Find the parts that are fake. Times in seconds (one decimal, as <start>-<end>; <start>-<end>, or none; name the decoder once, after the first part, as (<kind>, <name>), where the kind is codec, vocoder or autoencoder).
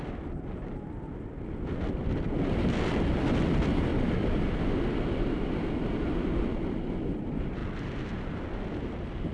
none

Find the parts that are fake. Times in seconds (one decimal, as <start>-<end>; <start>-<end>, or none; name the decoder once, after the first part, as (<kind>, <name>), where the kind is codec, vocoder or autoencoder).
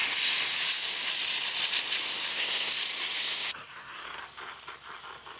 2.3-2.8 (codec, SNAC); 3.2-4.2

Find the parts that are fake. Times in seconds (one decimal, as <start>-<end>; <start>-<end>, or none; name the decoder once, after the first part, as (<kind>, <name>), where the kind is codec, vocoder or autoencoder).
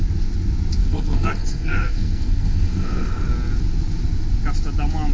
0.8-3.3 (codec, SNAC)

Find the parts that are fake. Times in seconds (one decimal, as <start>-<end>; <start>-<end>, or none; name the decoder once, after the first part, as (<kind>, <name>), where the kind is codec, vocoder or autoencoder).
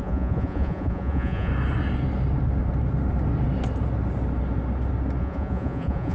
0.0-1.5 (vocoder, Vocos); 5.2-6.1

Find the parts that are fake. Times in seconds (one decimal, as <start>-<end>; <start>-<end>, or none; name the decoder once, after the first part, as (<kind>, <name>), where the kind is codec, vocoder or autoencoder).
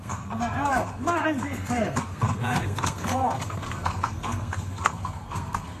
0.0-5.8 (codec, SNAC)